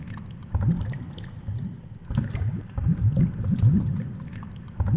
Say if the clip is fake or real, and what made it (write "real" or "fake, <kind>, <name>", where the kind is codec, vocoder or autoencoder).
real